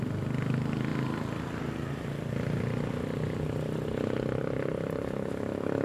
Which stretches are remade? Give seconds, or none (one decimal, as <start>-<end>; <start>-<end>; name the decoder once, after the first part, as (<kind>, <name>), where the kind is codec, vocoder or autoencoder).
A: none